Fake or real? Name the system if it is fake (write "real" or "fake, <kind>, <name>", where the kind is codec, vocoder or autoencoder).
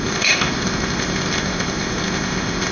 fake, codec, ZipCodec